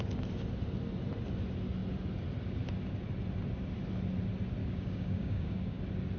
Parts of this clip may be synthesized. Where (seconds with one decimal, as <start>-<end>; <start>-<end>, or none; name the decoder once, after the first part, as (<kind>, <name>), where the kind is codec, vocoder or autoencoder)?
4.6-5.8 (codec, DAC)